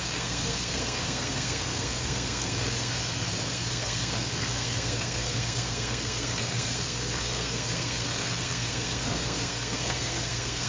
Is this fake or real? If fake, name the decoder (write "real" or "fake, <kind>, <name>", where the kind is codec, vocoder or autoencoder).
fake, codec, SNAC